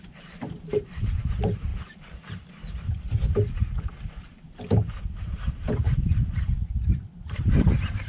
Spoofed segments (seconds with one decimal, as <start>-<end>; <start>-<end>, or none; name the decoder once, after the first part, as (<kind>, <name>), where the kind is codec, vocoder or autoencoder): 0.0-1.7 (vocoder, BigVGAN v2); 3.9-4.3; 5.2-8.1